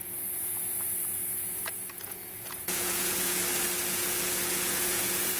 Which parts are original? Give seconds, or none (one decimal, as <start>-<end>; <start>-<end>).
3.4-3.9